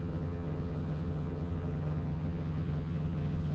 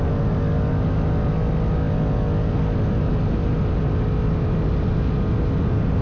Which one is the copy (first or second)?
first